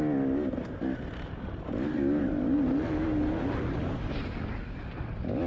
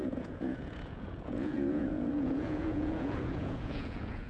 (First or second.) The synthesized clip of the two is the second